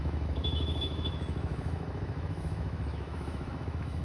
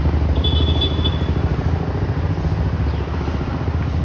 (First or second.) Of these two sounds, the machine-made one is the first